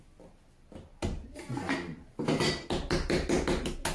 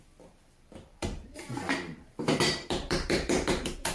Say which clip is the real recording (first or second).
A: first